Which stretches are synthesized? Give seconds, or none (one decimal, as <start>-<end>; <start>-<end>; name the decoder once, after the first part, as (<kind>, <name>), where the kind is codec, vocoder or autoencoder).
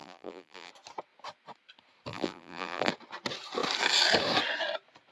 0.0-0.7 (vocoder, BigVGAN v2); 2.1-2.9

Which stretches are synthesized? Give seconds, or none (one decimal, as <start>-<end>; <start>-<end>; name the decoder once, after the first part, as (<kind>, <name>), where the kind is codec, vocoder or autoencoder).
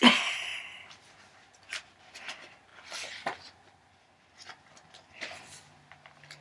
none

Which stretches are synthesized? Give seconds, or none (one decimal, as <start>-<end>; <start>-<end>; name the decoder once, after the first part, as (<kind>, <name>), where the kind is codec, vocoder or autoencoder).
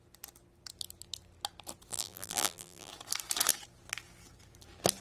1.9-2.9 (vocoder, BigVGAN v2)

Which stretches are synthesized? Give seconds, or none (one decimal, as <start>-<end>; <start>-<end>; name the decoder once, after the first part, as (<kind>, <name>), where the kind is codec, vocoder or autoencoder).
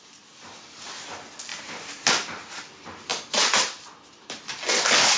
1.5-2.1 (vocoder, BigVGAN v2); 3.1-4.5